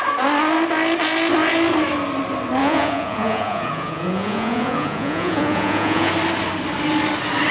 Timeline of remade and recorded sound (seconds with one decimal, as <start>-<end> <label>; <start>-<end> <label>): 0.0-2.6 recorded; 2.6-6.1 remade; 6.1-7.5 recorded